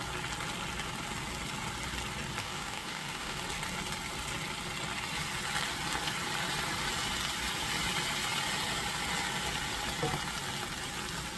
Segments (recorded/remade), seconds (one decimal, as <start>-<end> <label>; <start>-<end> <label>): 0.0-2.4 recorded; 2.4-3.4 remade; 3.4-11.4 recorded